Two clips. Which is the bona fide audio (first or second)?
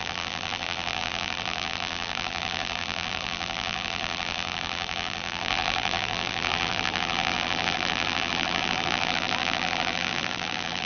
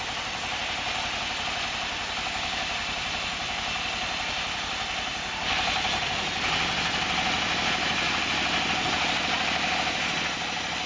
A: second